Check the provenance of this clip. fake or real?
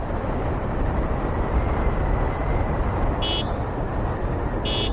real